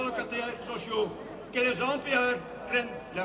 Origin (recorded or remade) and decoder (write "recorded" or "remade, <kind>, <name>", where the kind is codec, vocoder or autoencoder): recorded